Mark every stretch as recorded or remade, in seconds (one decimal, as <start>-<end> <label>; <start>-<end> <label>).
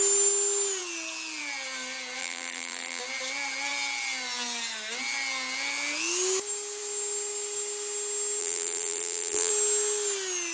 0.0-2.2 recorded; 2.2-3.0 remade; 3.0-8.4 recorded; 8.4-9.5 remade; 9.5-10.5 recorded